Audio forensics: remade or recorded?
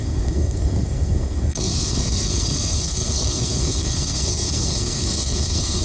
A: remade